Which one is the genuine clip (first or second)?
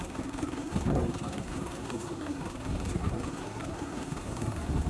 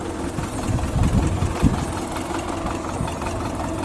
second